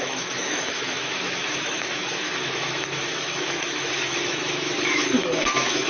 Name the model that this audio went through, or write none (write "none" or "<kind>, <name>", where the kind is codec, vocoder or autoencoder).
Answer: autoencoder, DAC-VAE